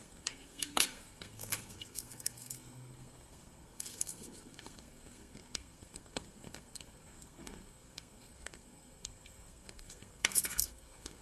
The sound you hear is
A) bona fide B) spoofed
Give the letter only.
B